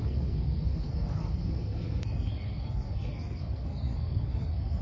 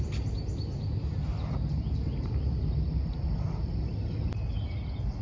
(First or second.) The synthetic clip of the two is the first